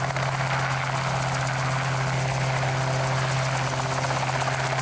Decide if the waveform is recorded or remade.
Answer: recorded